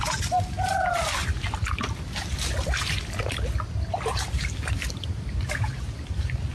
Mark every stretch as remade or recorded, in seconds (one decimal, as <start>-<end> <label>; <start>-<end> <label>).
0.0-6.5 recorded

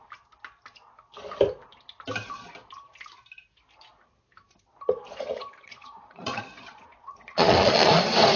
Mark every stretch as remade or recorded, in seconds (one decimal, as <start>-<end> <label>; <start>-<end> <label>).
0.0-5.1 recorded; 5.1-7.9 remade; 7.9-8.4 recorded

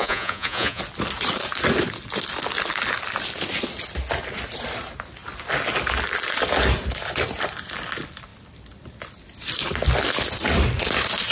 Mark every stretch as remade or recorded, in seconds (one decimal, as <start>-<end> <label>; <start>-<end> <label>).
0.0-0.8 remade; 0.8-11.3 recorded

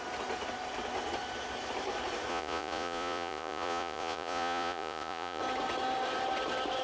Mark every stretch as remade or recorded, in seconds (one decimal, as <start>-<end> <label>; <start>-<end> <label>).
0.0-2.3 recorded; 2.3-5.4 remade; 5.4-6.8 recorded

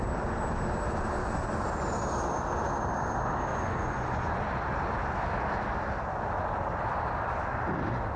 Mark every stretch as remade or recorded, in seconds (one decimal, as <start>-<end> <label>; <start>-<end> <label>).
0.0-3.5 recorded; 3.5-4.4 remade; 4.4-8.2 recorded

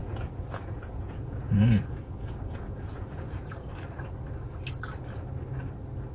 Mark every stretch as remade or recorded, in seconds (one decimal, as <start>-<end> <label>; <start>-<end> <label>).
0.0-3.7 remade; 3.7-6.1 recorded

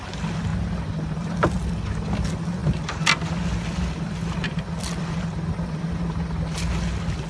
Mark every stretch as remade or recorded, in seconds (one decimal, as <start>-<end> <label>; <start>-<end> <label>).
0.0-7.3 recorded